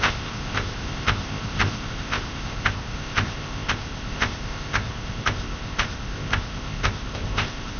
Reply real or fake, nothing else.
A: fake